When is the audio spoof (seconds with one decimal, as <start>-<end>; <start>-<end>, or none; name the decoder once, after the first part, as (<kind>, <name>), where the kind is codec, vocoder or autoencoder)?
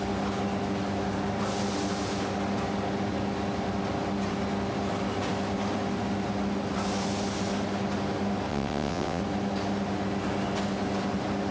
8.5-9.2 (vocoder, WaveNeXt)